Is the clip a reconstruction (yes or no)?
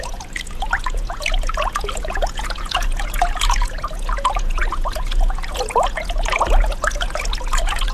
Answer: yes